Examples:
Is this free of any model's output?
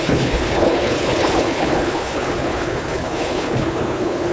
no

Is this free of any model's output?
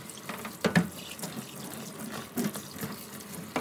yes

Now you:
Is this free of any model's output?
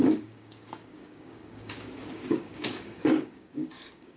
no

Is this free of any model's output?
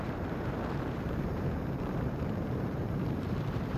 no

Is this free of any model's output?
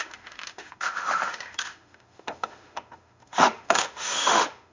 no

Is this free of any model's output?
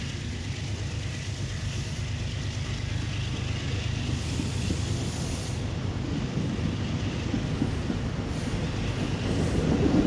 yes